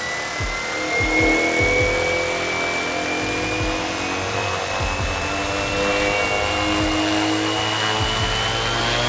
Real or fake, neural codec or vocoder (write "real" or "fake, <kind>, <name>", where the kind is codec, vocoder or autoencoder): real